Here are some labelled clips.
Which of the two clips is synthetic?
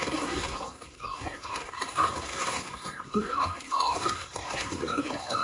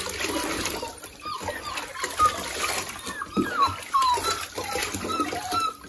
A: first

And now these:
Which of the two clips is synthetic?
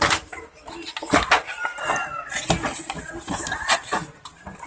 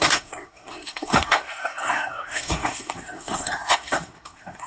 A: second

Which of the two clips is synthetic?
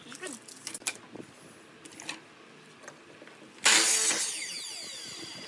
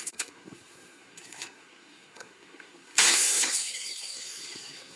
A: second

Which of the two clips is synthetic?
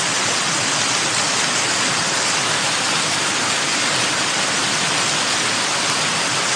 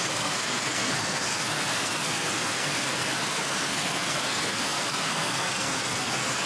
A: second